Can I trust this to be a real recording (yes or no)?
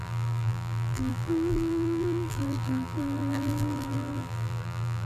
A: no